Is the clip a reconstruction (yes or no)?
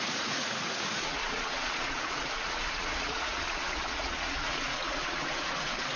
yes